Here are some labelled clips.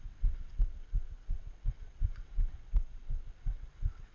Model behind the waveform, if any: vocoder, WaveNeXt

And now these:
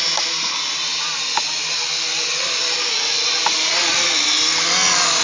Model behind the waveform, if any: none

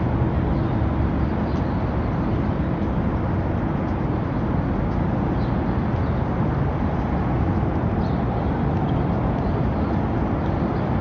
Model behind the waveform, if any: none